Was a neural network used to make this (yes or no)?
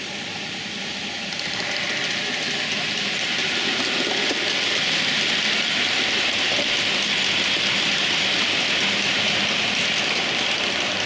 no